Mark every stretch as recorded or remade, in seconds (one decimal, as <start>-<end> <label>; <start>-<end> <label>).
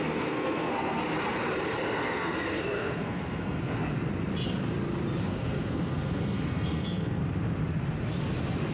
0.0-1.0 remade; 1.0-2.0 recorded; 2.0-3.8 remade; 3.8-5.2 recorded; 5.2-7.2 remade; 7.2-8.7 recorded